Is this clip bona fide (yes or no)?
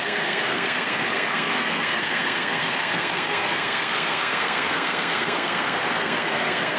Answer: no